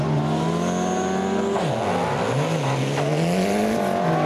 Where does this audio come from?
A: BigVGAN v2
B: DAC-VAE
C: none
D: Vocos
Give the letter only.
C